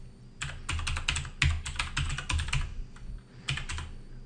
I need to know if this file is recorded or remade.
recorded